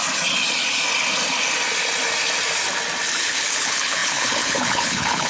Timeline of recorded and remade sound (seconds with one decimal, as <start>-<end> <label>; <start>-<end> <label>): 0.0-3.2 recorded; 3.2-5.3 remade